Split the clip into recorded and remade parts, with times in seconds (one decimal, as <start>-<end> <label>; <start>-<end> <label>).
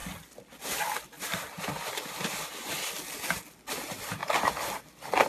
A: 0.0-5.3 recorded